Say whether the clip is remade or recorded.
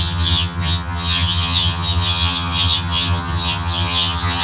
remade